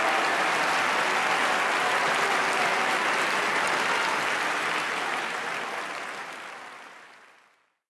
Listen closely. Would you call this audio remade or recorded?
recorded